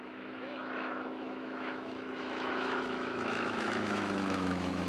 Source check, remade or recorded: remade